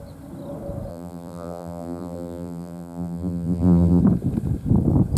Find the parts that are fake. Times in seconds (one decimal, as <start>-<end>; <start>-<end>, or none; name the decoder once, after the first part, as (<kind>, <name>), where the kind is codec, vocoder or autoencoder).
0.9-4.0 (vocoder, BigVGAN v2)